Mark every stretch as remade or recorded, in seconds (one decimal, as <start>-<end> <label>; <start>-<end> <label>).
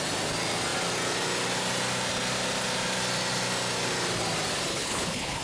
0.0-4.7 recorded; 4.7-5.4 remade